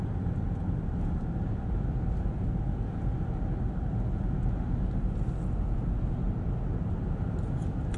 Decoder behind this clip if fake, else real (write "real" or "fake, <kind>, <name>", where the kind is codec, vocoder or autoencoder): real